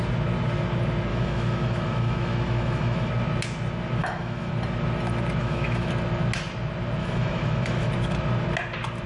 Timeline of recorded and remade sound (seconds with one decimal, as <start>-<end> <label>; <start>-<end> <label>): 0.0-1.1 recorded; 1.1-3.1 remade; 3.1-4.0 recorded; 4.0-4.5 remade; 4.5-5.4 recorded; 5.4-5.9 remade; 5.9-7.0 recorded; 7.0-7.9 remade; 7.9-9.1 recorded